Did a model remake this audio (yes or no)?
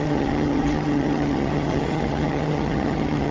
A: yes